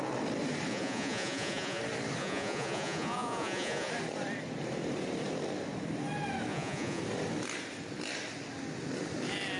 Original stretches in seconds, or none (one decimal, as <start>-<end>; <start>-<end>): 0.0-0.7; 1.8-2.2; 3.9-6.5; 7.0-9.6